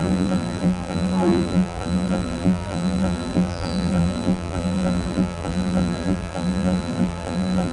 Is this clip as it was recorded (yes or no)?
no